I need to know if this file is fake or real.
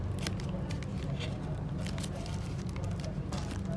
real